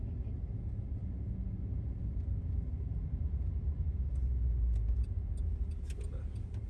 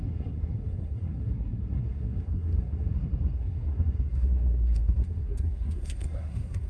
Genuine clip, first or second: first